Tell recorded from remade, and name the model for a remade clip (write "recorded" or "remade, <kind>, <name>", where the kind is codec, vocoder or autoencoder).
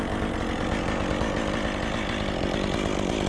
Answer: recorded